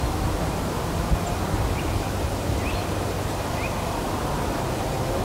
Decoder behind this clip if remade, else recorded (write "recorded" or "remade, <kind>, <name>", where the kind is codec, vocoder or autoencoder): recorded